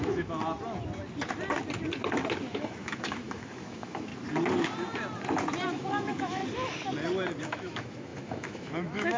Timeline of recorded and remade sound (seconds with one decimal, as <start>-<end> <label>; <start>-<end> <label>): 0.0-0.4 remade; 0.4-2.5 recorded; 2.5-4.1 remade; 4.1-5.7 recorded; 5.7-6.4 remade; 6.4-7.4 recorded; 7.4-9.2 remade

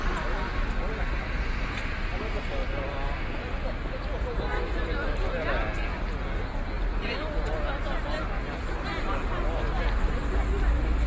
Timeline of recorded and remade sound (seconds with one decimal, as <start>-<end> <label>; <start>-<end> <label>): 0.0-2.6 recorded; 2.6-3.2 remade; 3.2-4.5 recorded; 4.5-5.2 remade; 5.2-11.1 recorded

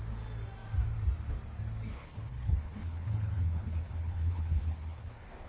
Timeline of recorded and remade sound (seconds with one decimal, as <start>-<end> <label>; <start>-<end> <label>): 0.0-1.9 recorded; 1.9-5.5 remade

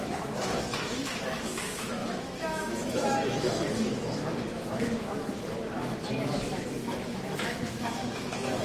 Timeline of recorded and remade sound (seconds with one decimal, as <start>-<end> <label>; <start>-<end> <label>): 0.0-8.6 remade

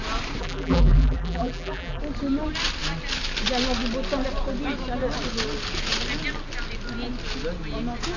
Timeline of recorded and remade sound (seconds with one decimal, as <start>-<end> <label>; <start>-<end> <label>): 0.0-0.4 recorded; 0.4-2.0 remade; 2.0-8.2 recorded

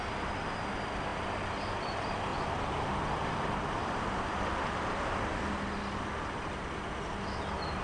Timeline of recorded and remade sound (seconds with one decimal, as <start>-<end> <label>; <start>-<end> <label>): 0.0-2.3 recorded; 2.3-5.5 remade; 5.5-7.8 recorded